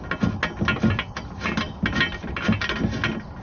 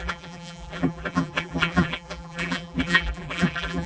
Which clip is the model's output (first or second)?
second